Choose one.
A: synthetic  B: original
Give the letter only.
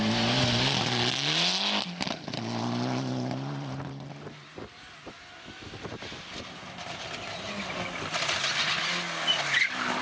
B